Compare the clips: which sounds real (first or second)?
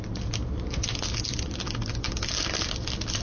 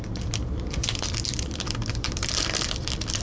first